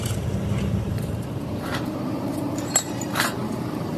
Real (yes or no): no